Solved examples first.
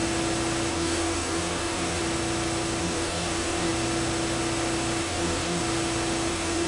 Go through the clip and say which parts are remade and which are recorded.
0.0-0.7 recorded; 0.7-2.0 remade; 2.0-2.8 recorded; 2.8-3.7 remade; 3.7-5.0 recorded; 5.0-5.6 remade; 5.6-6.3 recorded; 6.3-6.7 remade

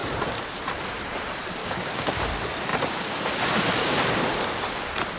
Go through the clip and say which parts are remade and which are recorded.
0.0-1.6 recorded; 1.6-2.2 remade; 2.2-5.2 recorded

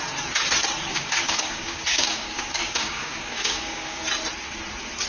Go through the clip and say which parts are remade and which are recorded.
0.0-0.9 recorded; 0.9-4.0 remade; 4.0-5.1 recorded

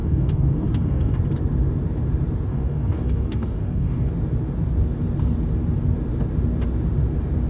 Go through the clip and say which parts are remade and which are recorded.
0.0-1.2 remade; 1.2-2.5 recorded; 2.5-4.1 remade; 4.1-7.5 recorded

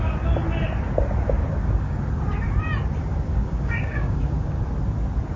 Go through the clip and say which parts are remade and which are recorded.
0.0-1.4 recorded; 1.4-2.0 remade; 2.0-3.3 recorded; 3.3-4.6 remade; 4.6-5.4 recorded

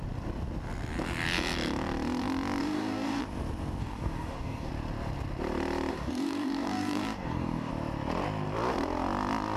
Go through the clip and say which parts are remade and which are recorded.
0.0-2.6 recorded; 2.6-3.2 remade; 3.2-3.8 recorded; 3.8-4.7 remade; 4.7-5.9 recorded; 5.9-7.7 remade; 7.7-9.6 recorded